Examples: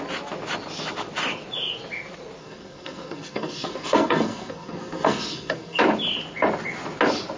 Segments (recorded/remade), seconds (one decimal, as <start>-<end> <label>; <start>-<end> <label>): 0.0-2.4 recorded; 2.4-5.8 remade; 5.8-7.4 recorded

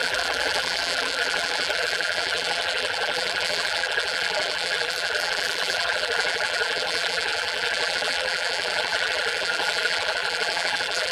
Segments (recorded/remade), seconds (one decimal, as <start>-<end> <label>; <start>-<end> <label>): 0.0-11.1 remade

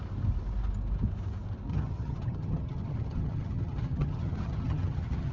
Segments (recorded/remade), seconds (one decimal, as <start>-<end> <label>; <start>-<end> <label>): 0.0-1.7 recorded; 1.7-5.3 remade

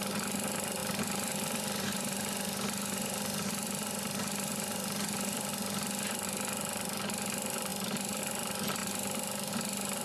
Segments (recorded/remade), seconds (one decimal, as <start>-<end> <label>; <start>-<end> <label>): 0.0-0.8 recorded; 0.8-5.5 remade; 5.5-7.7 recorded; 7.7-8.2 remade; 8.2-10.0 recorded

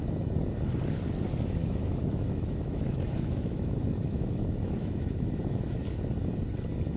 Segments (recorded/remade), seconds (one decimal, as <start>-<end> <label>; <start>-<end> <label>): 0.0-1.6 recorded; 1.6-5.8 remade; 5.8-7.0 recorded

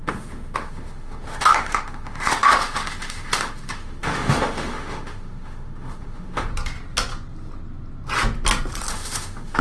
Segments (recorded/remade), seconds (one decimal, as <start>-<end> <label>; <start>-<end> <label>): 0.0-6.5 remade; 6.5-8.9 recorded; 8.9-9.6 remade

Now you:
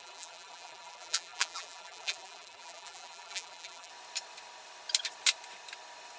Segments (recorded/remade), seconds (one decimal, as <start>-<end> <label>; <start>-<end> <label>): 0.0-3.9 remade; 3.9-6.2 recorded

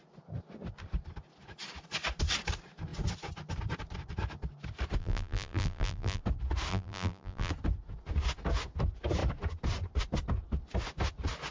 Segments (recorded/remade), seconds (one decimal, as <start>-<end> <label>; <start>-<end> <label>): 0.0-5.0 recorded; 5.0-6.2 remade; 6.2-6.7 recorded; 6.7-7.5 remade; 7.5-11.5 recorded